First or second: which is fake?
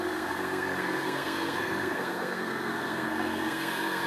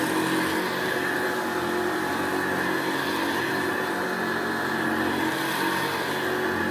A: first